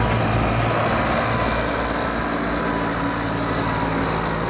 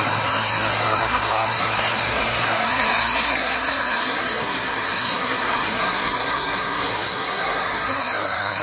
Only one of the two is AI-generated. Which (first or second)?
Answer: second